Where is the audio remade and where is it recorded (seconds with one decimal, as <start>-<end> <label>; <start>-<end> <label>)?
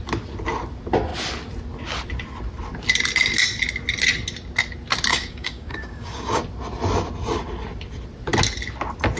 0.0-5.1 recorded; 5.1-6.4 remade; 6.4-9.2 recorded